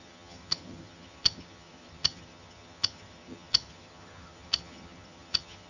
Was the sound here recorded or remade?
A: remade